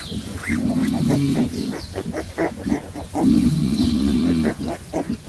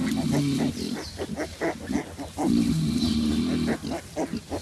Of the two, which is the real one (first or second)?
second